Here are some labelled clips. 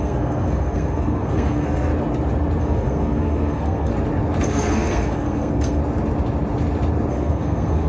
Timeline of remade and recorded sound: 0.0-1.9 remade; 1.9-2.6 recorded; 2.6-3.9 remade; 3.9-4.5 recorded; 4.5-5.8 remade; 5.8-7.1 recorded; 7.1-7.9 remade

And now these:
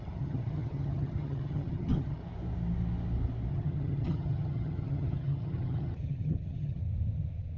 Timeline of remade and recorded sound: 0.0-2.2 remade; 2.2-3.5 recorded; 3.5-6.8 remade; 6.8-7.6 recorded

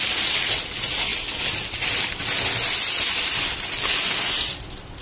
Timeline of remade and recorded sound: 0.0-5.0 recorded

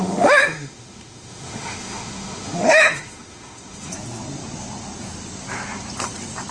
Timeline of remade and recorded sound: 0.0-3.9 remade; 3.9-6.5 recorded

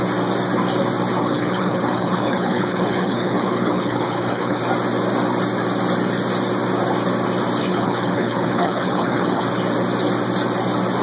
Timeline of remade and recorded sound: 0.0-1.2 recorded; 1.2-4.6 remade; 4.6-7.6 recorded; 7.6-9.4 remade; 9.4-11.0 recorded

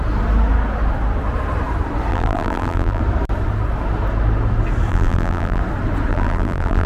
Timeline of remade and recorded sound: 0.0-2.1 recorded; 2.1-3.0 remade; 3.0-4.9 recorded; 4.9-5.6 remade; 5.6-6.1 recorded; 6.1-6.9 remade

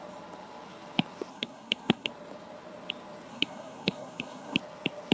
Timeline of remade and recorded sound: 0.0-1.3 recorded; 1.3-2.1 remade; 2.1-3.3 recorded; 3.3-4.6 remade; 4.6-5.1 recorded